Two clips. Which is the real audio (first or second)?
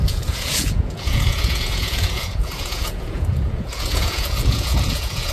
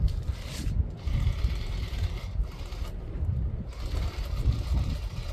second